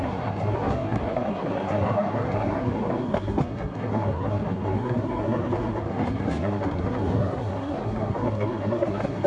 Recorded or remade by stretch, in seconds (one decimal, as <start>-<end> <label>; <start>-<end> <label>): 0.0-9.3 remade